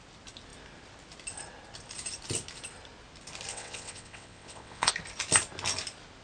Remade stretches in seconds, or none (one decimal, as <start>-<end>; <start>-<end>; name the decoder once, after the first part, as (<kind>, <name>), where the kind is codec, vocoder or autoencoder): 3.5-4.9 (vocoder, WaveNeXt)